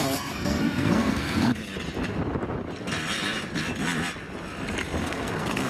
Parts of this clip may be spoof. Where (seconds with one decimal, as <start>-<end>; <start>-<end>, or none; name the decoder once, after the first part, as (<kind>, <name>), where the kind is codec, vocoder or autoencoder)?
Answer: 0.0-1.6 (codec, SNAC); 5.0-5.7